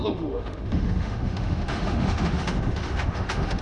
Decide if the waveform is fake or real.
fake